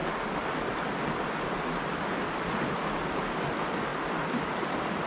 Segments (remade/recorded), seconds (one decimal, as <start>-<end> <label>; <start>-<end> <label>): 0.0-5.1 recorded